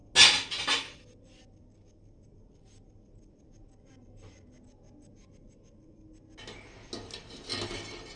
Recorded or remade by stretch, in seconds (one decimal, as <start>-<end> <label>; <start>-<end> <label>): 0.0-8.2 recorded